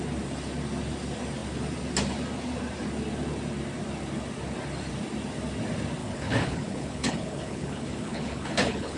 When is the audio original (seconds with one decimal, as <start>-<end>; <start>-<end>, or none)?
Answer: 0.0-6.0